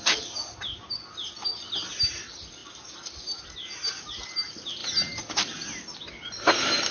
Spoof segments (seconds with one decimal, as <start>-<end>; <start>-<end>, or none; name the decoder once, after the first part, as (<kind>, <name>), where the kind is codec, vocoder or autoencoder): none